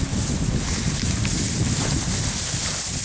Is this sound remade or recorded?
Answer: recorded